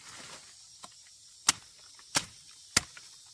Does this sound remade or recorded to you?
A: recorded